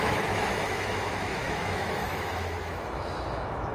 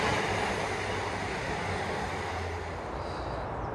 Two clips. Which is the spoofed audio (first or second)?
first